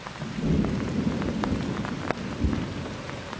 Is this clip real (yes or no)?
yes